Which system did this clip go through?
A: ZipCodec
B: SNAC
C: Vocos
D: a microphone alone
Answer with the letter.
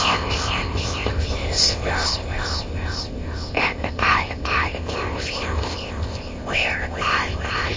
A